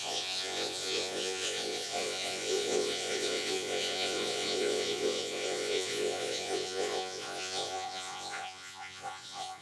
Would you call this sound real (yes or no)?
no